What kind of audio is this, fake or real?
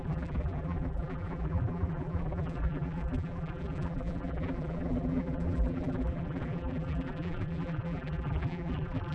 fake